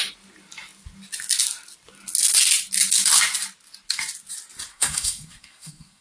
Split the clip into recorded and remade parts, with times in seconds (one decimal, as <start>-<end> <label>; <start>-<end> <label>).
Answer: 0.0-4.7 recorded; 4.7-6.0 remade